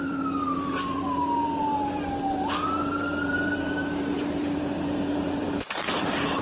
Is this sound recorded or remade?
remade